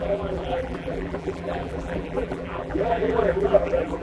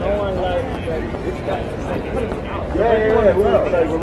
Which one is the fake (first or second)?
first